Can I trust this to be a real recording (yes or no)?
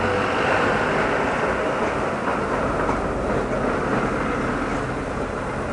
yes